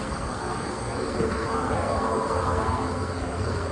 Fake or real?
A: fake